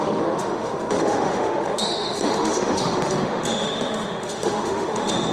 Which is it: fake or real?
fake